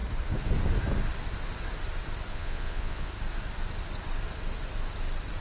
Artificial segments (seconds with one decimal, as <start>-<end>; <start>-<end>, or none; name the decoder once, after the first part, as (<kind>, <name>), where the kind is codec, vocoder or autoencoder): 2.3-3.1 (vocoder, Vocos)

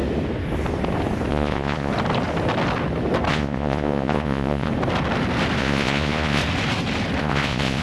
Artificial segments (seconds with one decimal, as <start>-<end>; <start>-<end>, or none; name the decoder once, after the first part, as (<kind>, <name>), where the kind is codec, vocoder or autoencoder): 1.3-1.9 (vocoder, Vocos); 3.3-4.7; 5.6-6.4; 7.2-7.8